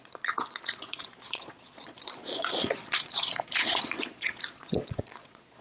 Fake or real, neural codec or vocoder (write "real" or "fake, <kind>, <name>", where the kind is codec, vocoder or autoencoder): fake, vocoder, Vocos